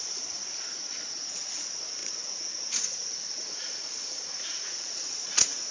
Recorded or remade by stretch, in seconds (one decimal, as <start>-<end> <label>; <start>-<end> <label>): 0.0-2.0 recorded; 2.0-5.7 remade